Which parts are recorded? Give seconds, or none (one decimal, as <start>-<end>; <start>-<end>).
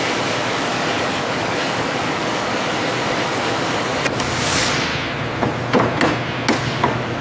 4.9-6.6